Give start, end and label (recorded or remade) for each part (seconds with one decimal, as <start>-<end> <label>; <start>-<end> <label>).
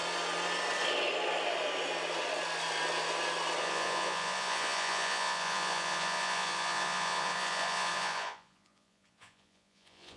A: 0.0-3.6 recorded; 3.6-10.2 remade